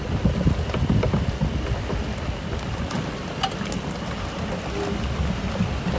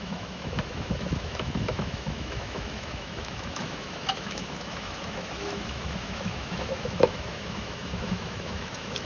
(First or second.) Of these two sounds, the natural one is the first